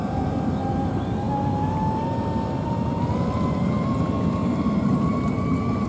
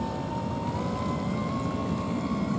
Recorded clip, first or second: second